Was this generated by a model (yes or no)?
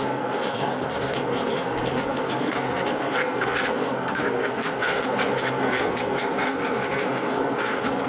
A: yes